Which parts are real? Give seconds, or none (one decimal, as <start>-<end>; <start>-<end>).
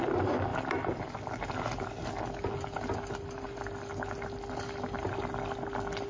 0.0-6.1